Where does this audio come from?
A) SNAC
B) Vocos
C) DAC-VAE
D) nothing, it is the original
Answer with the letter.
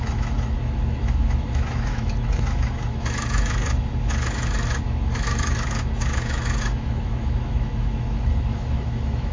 C